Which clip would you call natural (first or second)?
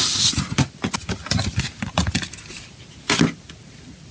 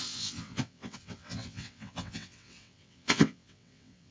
first